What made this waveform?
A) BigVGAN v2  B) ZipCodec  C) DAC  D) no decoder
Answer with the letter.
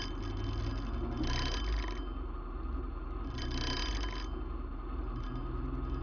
D